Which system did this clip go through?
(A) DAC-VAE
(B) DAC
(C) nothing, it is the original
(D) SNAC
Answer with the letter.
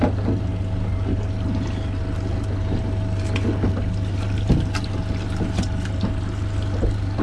C